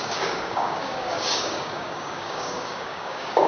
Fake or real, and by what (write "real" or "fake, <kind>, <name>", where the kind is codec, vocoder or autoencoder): fake, codec, DAC